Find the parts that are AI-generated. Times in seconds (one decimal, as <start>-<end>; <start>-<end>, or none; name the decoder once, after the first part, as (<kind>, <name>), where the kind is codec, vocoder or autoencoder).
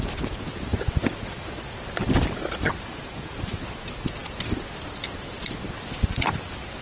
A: none